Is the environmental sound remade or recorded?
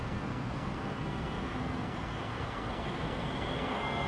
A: remade